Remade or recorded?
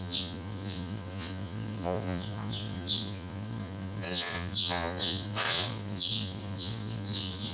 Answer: remade